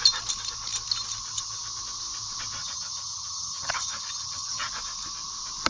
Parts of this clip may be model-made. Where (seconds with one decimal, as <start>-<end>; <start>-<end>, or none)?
2.6-4.7